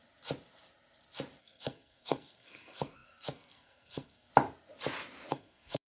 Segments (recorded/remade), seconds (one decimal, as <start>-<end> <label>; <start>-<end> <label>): 0.0-1.4 recorded; 1.4-4.3 remade; 4.3-5.3 recorded; 5.3-5.9 remade